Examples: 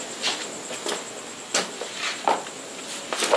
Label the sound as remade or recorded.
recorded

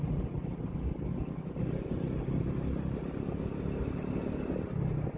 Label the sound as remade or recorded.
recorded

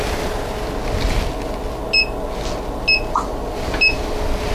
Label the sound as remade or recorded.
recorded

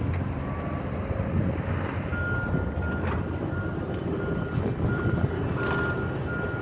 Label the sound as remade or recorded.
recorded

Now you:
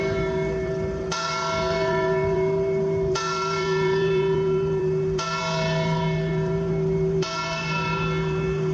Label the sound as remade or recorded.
remade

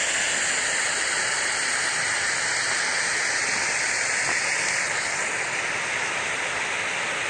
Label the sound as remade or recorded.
recorded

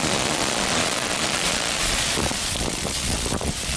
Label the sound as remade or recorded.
remade